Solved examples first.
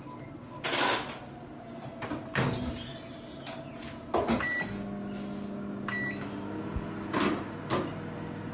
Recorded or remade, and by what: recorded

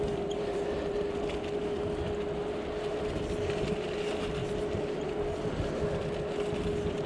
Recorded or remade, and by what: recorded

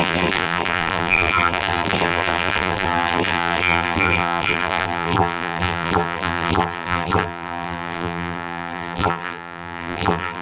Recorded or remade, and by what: remade, vocoder, BigVGAN v2